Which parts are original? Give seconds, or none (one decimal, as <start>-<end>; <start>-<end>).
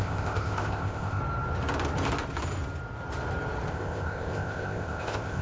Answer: 1.2-3.7